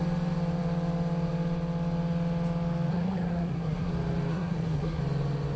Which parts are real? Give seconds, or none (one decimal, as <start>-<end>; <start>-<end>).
0.0-2.9; 3.9-4.3; 5.0-5.6